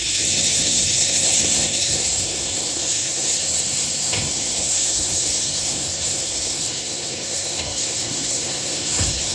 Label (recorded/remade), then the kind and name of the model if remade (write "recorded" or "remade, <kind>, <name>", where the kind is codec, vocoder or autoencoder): remade, codec, SNAC